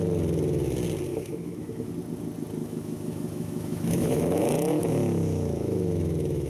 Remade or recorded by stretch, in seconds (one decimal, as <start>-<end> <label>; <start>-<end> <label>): 0.0-1.1 recorded; 1.1-1.9 remade; 1.9-2.6 recorded; 2.6-6.5 remade